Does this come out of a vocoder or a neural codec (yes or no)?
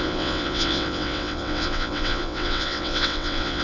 yes